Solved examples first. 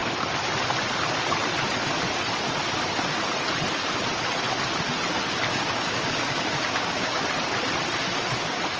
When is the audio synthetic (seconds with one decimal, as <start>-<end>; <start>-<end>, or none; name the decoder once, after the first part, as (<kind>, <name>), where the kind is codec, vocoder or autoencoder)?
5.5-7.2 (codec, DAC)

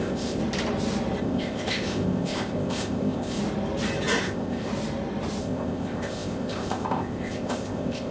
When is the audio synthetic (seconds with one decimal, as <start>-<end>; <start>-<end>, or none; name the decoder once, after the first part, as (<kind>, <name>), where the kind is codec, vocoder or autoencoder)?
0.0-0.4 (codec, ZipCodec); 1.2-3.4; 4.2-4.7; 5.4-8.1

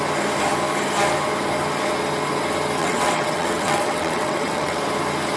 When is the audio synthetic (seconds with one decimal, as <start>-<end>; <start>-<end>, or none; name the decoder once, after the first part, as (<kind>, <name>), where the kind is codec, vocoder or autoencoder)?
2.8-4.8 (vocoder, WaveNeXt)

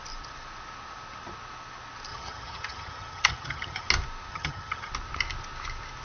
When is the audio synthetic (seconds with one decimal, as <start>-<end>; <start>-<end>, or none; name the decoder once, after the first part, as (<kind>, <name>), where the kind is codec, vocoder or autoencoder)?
2.1-3.9 (vocoder, HiFi-GAN); 4.3-4.9

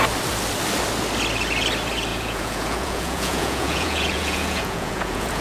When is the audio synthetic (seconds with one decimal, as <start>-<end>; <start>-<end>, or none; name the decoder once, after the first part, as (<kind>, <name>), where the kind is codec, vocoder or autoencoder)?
2.1-5.4 (vocoder, Vocos)

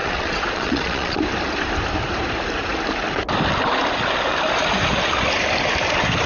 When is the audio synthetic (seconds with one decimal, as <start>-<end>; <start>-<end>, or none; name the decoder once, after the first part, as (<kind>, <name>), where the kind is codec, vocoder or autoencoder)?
0.0-1.2 (vocoder, Vocos)